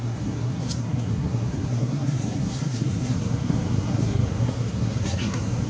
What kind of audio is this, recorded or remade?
remade